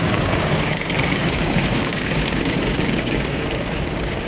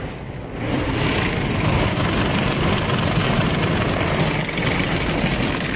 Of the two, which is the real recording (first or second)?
second